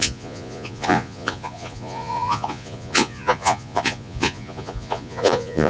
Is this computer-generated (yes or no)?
yes